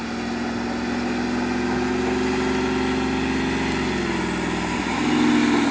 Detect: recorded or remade recorded